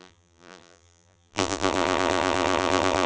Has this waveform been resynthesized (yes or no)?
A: yes